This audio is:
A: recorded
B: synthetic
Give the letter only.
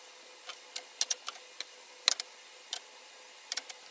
A